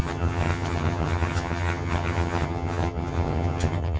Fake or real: fake